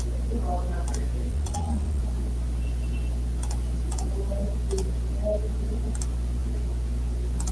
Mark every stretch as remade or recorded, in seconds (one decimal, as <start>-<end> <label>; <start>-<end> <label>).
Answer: 0.0-1.3 recorded; 1.3-2.0 remade; 2.0-7.5 recorded